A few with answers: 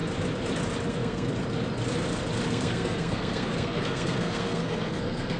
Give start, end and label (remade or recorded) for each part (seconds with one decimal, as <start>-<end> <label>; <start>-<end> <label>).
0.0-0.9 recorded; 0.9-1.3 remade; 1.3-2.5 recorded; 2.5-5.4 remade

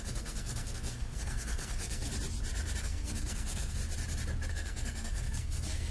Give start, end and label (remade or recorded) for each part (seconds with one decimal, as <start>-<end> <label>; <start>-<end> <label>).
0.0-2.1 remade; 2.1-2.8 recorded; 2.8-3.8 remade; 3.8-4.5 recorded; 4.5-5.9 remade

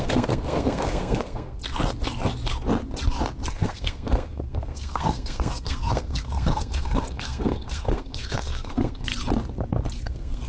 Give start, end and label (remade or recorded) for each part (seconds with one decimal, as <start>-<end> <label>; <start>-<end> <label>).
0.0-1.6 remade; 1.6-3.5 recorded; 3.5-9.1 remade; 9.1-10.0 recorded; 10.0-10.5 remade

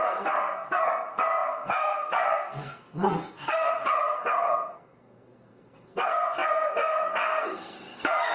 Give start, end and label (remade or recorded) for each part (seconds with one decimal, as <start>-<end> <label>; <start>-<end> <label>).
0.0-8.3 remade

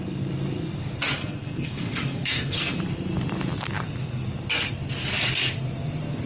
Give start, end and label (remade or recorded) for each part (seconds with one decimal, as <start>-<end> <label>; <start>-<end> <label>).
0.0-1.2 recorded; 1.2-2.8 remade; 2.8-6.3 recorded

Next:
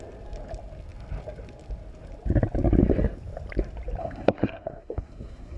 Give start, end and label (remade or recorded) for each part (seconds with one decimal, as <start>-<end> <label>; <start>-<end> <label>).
0.0-4.0 recorded; 4.0-5.6 remade